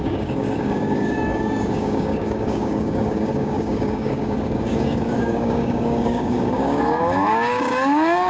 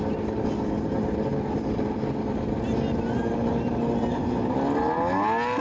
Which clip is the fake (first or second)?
first